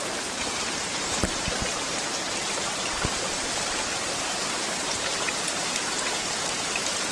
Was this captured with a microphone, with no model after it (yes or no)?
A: no